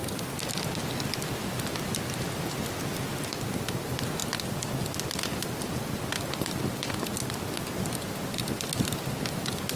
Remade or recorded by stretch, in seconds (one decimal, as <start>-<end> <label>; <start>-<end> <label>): 0.0-9.8 recorded